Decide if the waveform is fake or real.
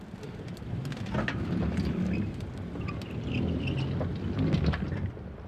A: real